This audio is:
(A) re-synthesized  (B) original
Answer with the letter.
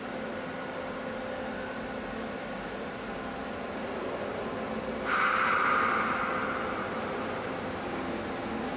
B